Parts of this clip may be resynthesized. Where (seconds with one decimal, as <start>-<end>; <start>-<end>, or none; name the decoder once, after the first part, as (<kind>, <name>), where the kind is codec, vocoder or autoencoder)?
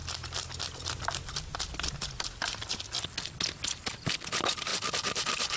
none